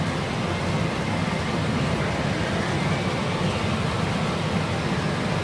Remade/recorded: recorded